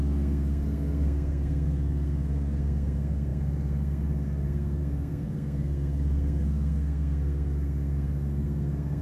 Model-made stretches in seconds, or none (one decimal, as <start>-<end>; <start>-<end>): 0.0-9.0